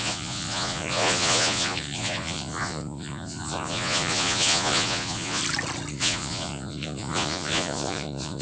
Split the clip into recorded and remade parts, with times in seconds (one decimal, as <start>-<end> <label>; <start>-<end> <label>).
0.0-5.4 remade; 5.4-5.9 recorded; 5.9-8.4 remade